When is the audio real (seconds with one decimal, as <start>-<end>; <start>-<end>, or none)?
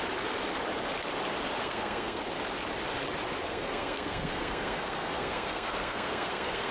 0.0-1.6; 2.2-3.4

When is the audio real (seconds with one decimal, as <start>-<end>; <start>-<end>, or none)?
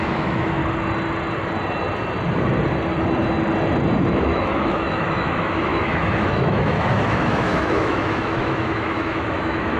0.6-4.1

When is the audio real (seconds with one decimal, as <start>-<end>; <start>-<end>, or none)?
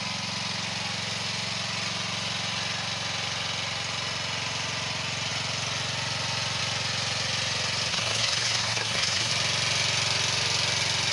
0.0-7.9; 9.3-11.1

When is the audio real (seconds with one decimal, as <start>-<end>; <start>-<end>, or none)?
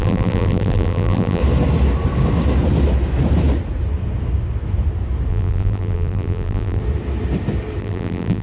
1.4-5.3; 6.8-7.8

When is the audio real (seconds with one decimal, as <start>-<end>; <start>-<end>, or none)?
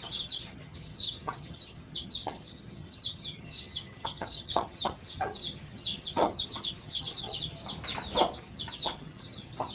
7.6-8.4